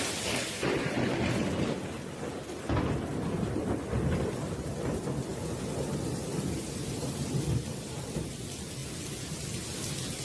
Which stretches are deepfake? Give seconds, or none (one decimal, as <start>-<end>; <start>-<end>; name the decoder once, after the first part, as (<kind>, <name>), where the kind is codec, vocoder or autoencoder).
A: none